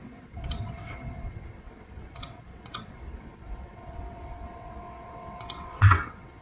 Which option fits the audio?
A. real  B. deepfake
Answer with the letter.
B